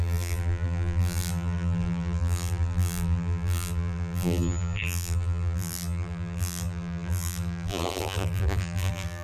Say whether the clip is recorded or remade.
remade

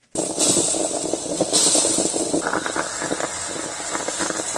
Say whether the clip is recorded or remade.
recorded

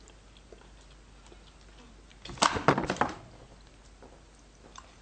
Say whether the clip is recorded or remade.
recorded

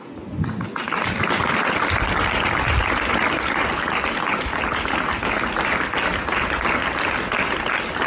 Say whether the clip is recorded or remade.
recorded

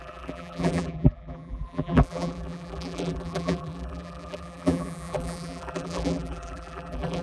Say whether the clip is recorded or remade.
remade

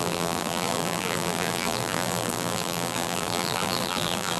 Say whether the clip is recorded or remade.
remade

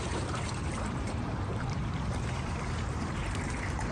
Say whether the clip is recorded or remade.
remade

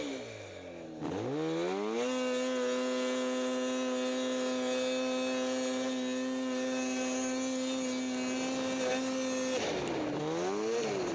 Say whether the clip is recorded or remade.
recorded